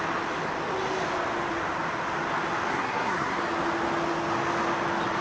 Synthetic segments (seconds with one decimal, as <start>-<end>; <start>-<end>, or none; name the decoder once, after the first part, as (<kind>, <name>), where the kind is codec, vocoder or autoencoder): 2.7-3.4 (codec, SNAC)